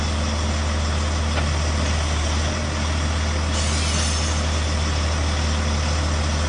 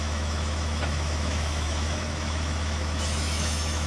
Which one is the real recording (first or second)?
first